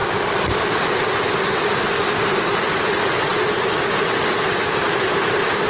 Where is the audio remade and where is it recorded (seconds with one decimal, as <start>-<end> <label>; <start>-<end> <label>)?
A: 0.0-0.6 remade; 0.6-3.3 recorded; 3.3-4.1 remade; 4.1-4.6 recorded; 4.6-5.7 remade